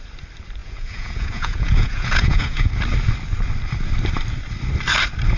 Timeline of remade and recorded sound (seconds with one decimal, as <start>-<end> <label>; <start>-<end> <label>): 0.0-0.6 recorded; 0.6-2.7 remade; 2.7-5.4 recorded